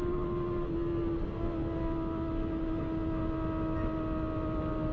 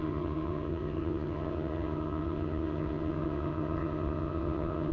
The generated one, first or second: second